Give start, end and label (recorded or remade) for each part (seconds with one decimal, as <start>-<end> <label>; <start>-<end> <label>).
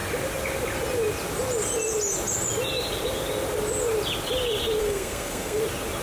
0.0-4.8 recorded; 4.8-5.6 remade; 5.6-6.0 recorded